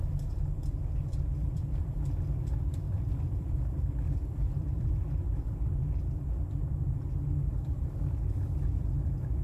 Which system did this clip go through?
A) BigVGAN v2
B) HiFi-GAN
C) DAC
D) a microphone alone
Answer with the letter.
A